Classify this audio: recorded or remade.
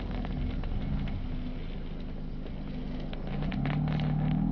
recorded